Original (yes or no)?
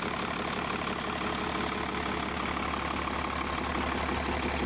yes